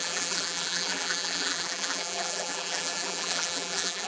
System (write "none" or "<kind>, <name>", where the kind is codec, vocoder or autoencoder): vocoder, BigVGAN v2